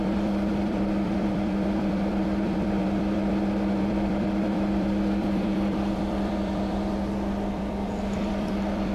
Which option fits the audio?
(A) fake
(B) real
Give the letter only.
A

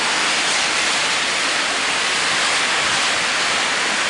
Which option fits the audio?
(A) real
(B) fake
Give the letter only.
A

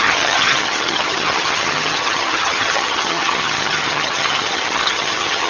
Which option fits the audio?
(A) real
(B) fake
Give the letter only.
B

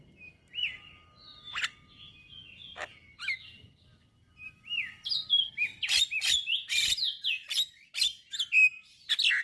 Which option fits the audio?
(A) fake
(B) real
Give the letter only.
B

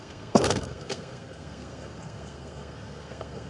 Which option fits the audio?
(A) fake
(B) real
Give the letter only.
A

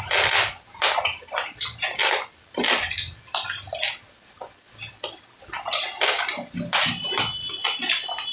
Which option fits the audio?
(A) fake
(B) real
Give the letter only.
B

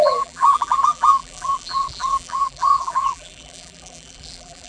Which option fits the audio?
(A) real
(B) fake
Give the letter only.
B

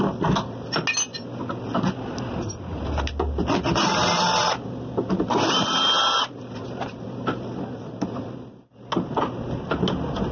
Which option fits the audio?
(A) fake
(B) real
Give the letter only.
B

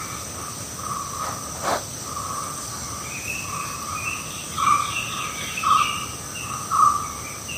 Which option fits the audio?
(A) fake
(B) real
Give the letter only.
B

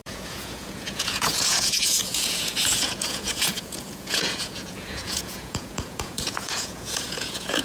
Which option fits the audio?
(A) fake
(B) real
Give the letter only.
A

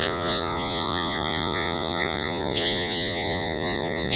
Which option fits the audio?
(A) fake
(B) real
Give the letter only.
A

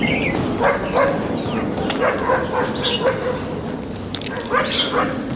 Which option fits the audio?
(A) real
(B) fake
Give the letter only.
A